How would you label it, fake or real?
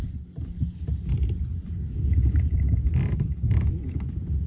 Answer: real